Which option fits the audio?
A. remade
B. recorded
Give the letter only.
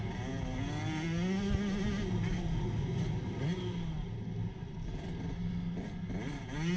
B